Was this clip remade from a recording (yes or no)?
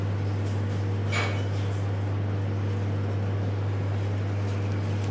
no